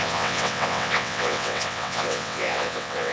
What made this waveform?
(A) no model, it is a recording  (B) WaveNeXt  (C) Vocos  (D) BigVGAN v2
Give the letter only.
B